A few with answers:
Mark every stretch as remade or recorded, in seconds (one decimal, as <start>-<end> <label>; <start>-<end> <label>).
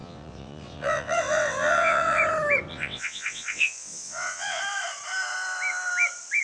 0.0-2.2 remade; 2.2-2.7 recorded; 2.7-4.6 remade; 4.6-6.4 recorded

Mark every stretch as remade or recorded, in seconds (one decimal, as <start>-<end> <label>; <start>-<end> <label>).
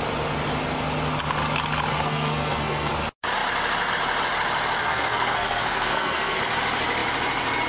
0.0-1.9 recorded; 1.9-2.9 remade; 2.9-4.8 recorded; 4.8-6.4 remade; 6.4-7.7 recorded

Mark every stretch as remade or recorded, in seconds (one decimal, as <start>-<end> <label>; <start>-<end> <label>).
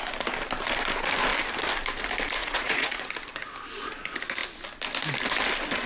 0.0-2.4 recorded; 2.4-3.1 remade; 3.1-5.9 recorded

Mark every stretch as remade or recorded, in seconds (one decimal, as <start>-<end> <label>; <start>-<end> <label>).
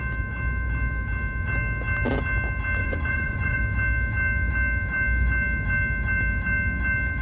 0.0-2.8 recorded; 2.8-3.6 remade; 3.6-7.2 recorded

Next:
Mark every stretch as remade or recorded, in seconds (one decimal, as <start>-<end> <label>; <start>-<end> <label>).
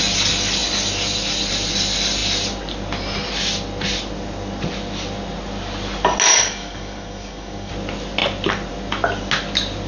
0.0-6.3 recorded; 6.3-7.7 remade; 7.7-9.9 recorded